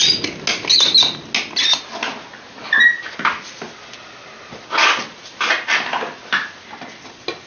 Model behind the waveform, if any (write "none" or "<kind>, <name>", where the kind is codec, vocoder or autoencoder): none